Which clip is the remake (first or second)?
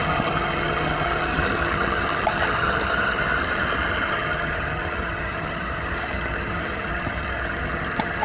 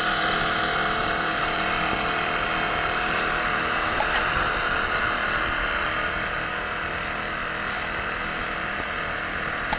first